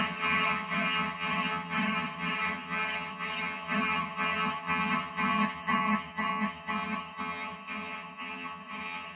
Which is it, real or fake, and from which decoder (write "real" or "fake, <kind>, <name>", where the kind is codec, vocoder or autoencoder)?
fake, vocoder, HiFi-GAN